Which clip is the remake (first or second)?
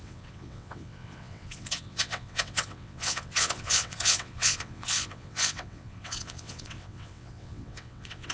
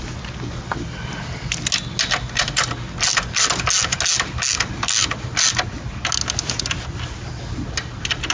first